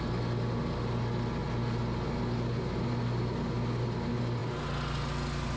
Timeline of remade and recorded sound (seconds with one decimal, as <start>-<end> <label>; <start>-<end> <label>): 0.0-5.6 recorded